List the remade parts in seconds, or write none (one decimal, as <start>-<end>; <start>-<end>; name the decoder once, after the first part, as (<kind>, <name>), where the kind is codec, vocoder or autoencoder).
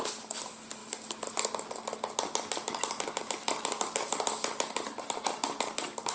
none